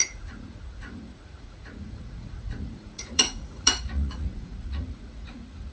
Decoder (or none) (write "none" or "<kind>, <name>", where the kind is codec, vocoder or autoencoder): vocoder, Vocos